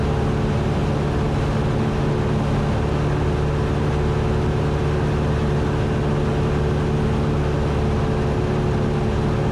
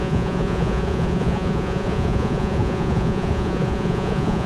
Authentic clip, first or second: first